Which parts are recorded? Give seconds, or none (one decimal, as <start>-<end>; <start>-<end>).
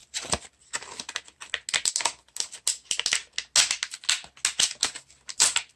0.0-5.8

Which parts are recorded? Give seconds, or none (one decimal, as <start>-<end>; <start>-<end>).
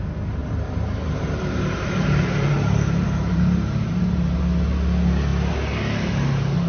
0.0-0.4; 4.4-6.7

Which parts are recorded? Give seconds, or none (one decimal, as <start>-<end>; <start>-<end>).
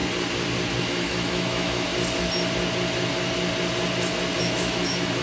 0.0-0.8; 1.9-4.4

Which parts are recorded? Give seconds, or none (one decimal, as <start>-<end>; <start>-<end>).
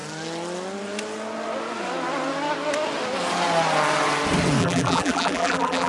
0.0-4.6